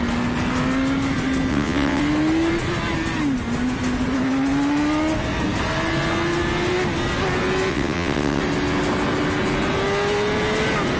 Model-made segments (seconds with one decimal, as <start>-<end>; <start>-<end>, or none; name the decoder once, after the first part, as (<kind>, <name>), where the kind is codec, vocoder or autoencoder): 1.5-2.0 (vocoder, WaveNeXt); 7.7-8.4